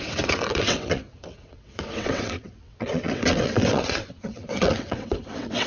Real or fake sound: fake